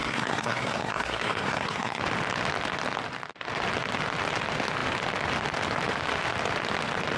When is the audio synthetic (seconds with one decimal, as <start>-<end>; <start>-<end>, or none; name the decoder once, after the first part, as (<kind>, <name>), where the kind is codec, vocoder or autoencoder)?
0.0-2.0 (codec, SNAC)